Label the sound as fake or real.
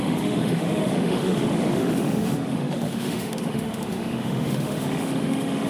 fake